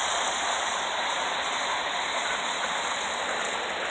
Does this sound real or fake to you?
real